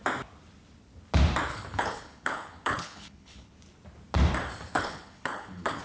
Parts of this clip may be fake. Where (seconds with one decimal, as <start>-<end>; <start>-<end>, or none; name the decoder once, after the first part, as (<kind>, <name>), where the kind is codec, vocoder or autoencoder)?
1.5-3.6 (codec, HILCodec); 4.7-5.8